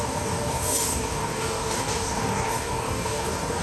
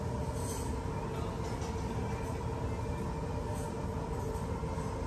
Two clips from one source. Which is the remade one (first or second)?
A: first